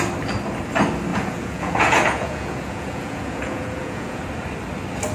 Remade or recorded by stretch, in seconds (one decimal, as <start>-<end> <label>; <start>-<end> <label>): 0.0-1.1 recorded; 1.1-4.2 remade; 4.2-5.1 recorded